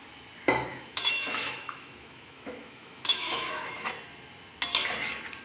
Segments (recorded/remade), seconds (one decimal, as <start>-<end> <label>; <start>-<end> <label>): 0.0-0.7 recorded; 0.7-3.9 remade; 3.9-5.4 recorded